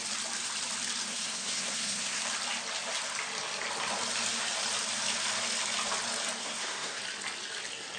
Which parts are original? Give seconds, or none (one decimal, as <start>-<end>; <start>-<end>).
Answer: 0.0-1.1; 2.2-6.4; 7.0-8.0